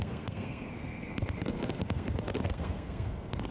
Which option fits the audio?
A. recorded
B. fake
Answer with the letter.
B